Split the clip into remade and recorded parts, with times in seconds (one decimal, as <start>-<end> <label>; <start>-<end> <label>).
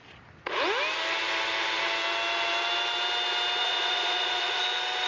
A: 0.0-3.6 recorded; 3.6-4.6 remade; 4.6-5.1 recorded